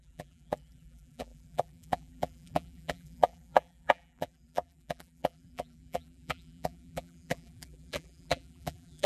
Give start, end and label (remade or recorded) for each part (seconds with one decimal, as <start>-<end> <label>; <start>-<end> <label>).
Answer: 0.0-9.1 remade